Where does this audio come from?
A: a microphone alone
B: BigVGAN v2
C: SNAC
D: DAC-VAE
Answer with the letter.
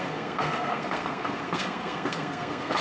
C